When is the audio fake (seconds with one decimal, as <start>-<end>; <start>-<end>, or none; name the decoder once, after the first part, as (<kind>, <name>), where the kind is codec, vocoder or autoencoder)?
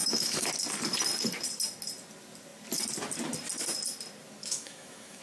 0.0-0.5 (autoencoder, DAC-VAE); 4.4-5.2